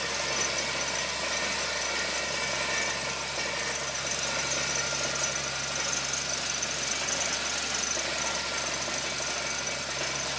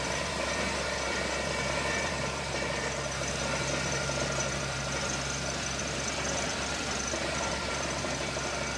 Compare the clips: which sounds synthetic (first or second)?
second